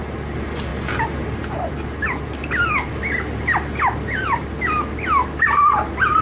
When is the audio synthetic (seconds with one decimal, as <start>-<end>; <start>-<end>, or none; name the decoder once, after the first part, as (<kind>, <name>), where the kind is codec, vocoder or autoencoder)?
none